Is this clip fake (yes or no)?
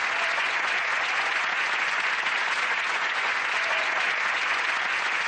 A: yes